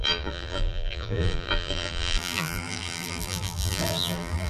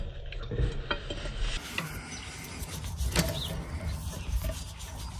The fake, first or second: first